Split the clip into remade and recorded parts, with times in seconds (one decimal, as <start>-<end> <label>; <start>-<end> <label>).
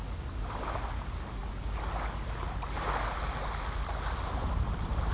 0.0-5.1 recorded